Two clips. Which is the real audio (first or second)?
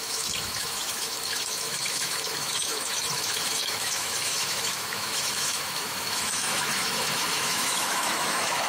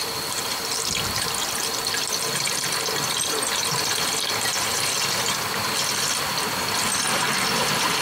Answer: second